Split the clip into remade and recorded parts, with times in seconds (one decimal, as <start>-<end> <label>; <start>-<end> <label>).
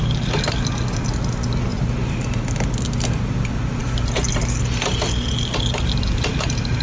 0.0-6.8 recorded